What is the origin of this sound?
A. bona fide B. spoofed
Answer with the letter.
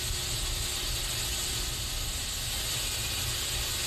A